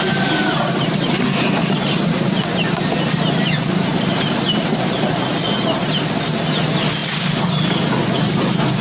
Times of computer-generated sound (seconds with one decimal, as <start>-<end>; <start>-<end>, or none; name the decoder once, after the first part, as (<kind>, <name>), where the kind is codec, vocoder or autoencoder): none